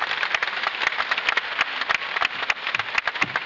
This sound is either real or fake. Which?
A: real